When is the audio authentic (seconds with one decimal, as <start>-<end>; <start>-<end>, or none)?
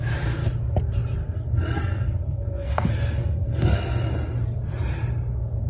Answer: 0.0-1.2; 4.1-5.7